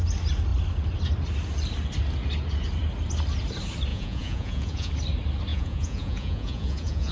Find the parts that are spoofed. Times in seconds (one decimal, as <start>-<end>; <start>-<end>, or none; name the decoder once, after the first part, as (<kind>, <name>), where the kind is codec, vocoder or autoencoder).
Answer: 3.9-4.9 (vocoder, Vocos); 5.5-7.1